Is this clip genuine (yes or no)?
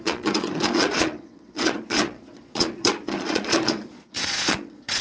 no